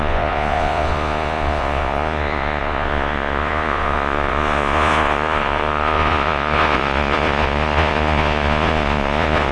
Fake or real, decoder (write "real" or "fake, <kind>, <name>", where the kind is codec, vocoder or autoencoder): fake, vocoder, Vocos